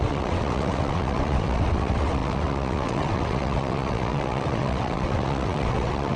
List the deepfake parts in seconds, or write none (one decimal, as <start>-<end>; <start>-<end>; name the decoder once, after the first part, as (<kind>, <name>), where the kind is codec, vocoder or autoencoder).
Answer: 0.0-6.2 (vocoder, WaveNeXt)